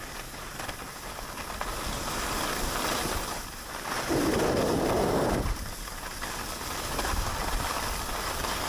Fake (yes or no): no